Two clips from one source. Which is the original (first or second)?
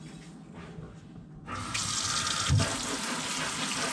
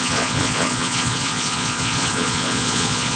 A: first